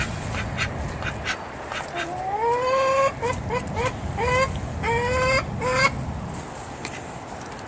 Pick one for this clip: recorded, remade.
recorded